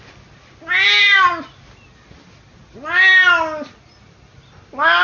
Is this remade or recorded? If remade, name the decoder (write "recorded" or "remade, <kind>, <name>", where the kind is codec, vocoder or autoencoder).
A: recorded